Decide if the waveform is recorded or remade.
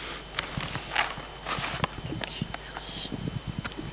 recorded